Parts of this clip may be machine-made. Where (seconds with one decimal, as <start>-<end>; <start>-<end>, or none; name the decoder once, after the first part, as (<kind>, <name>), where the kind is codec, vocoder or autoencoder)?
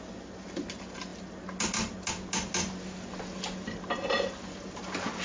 none